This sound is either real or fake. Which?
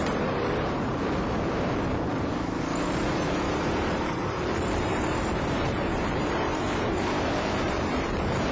fake